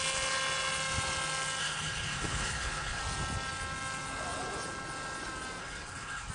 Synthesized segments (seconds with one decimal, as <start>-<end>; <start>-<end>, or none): 1.6-3.0; 5.6-6.3